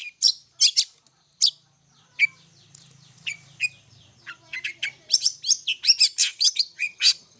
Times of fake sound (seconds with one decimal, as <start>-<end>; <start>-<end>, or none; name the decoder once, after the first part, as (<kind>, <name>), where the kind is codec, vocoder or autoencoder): 6.3-7.4 (vocoder, HiFi-GAN)